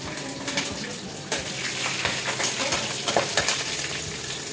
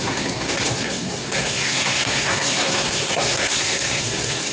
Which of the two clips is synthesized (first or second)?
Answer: second